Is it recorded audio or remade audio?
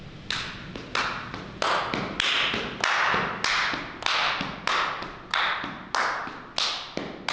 recorded